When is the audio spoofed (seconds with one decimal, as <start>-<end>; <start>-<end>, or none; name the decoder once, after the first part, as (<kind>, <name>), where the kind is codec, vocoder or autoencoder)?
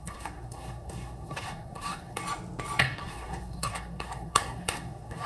0.0-2.2 (codec, SNAC); 2.8-5.3